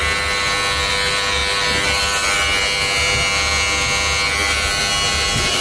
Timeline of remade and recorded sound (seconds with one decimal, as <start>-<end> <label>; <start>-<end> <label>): 0.0-5.6 recorded